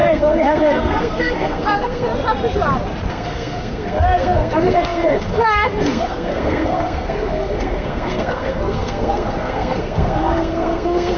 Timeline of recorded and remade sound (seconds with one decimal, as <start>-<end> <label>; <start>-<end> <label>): 0.0-2.1 remade; 2.1-3.1 recorded; 3.1-11.2 remade